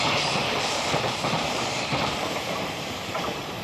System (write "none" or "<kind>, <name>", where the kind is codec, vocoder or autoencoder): vocoder, BigVGAN v2